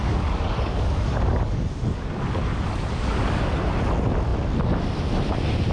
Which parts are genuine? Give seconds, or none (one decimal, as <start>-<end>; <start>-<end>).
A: 3.4-5.7